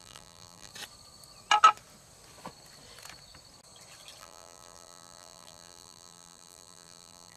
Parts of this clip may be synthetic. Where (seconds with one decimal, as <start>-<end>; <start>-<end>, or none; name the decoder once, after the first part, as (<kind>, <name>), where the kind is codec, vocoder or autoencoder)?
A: 0.0-0.7 (vocoder, BigVGAN v2); 4.2-7.4